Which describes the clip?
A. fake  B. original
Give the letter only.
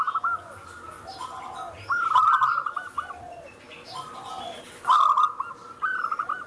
B